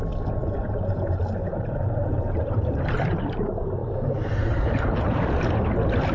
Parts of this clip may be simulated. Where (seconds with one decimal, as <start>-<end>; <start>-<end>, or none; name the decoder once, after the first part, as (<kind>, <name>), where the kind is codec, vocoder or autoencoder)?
0.4-3.2 (vocoder, BigVGAN v2); 3.8-5.3